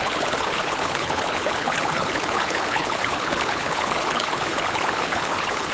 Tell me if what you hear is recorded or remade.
remade